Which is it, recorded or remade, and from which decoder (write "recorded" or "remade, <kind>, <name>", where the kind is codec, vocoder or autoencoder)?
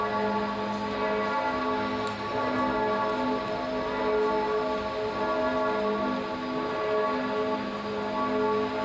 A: recorded